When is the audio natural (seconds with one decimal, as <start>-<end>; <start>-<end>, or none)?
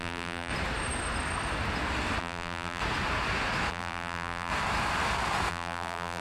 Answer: 0.5-2.2; 2.8-3.7; 4.5-5.5